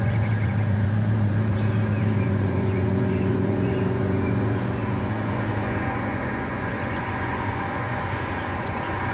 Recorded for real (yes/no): no